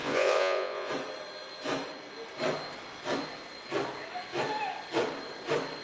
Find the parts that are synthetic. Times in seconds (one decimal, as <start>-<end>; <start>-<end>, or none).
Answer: 0.0-0.9